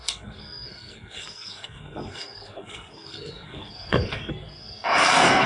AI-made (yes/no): yes